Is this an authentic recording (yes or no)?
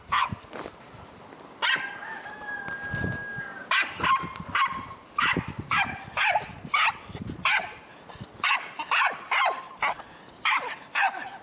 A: yes